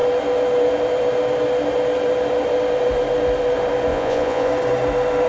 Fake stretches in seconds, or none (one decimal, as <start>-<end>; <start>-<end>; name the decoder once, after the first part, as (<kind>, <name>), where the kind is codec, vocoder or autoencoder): 3.9-4.5 (vocoder, Vocos)